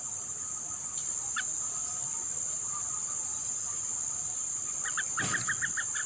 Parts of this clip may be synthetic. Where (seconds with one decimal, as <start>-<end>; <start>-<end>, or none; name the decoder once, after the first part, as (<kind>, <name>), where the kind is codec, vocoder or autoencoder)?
none